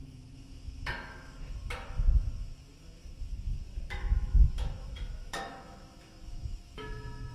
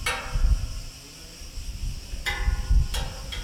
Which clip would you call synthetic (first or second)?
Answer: first